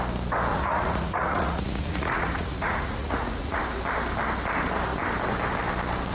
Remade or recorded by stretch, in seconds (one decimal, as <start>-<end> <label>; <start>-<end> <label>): 0.0-0.5 recorded; 0.5-3.6 remade; 3.6-6.1 recorded